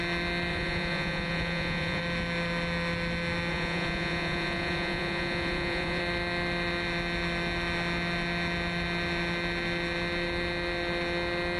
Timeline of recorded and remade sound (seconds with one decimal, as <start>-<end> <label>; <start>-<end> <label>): 0.0-0.5 recorded; 0.5-2.0 remade; 2.0-3.5 recorded; 3.5-6.0 remade; 6.0-11.6 recorded